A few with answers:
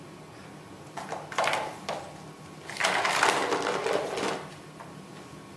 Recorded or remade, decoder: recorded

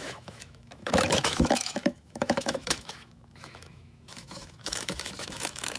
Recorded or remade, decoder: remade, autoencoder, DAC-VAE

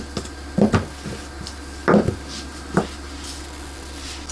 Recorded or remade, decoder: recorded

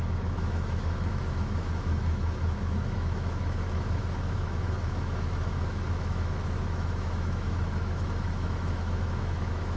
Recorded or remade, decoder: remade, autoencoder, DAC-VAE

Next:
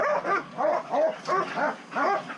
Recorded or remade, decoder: recorded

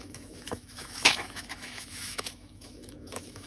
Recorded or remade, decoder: remade, autoencoder, DAC-VAE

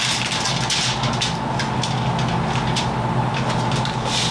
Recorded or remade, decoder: recorded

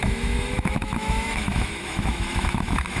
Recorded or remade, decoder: remade, autoencoder, DAC-VAE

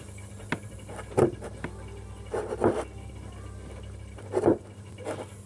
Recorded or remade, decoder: recorded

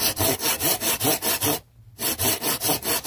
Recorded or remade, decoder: recorded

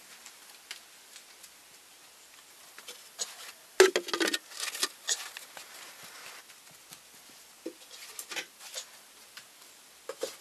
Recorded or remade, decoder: recorded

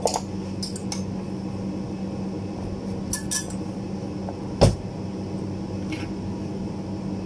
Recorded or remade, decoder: recorded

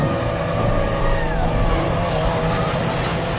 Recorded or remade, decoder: recorded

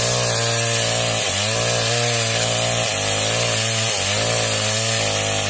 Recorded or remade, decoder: recorded